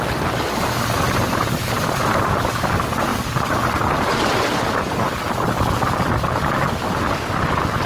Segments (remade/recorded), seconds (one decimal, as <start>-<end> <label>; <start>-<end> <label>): 0.0-7.9 recorded